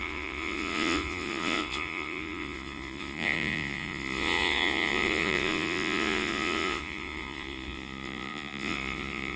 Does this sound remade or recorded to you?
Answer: remade